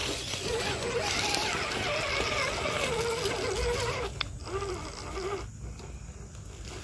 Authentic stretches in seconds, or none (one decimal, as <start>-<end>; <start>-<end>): 1.0-6.8